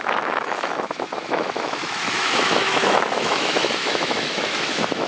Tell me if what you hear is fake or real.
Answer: fake